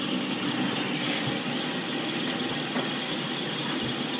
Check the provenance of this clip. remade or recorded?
recorded